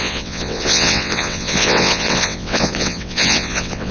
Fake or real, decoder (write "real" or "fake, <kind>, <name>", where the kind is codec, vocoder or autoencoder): fake, vocoder, WaveNeXt